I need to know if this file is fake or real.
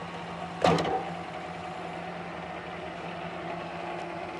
real